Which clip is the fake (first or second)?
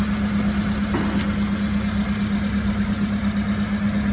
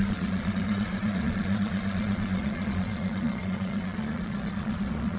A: second